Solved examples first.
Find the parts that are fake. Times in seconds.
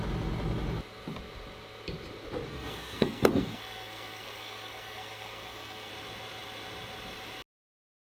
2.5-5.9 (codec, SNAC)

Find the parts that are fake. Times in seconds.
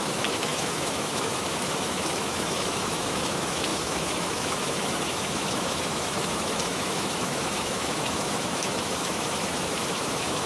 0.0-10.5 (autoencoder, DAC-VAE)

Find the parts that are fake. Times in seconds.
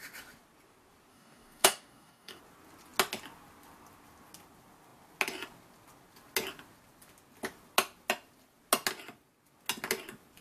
1.1-2.4 (codec, DAC)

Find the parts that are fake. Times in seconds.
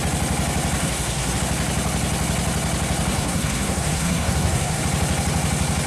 0.8-1.4 (codec, SNAC); 3.1-4.8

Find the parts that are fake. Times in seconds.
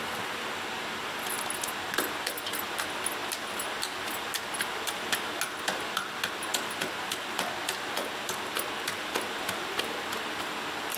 none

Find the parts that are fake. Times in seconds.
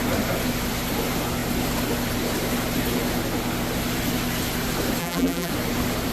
5.0-5.5 (vocoder, BigVGAN v2)